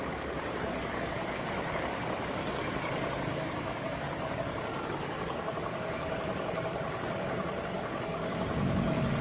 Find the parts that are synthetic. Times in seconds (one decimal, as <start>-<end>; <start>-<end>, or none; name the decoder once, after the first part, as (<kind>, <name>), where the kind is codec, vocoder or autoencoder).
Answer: 0.0-9.2 (codec, DAC)